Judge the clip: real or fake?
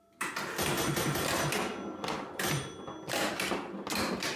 real